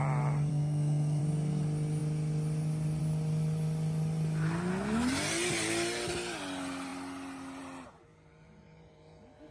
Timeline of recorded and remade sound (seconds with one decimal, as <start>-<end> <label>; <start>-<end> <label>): 0.0-0.5 recorded; 0.5-1.2 remade; 1.2-9.5 recorded